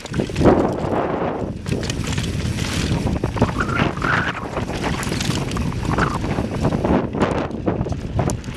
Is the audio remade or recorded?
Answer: recorded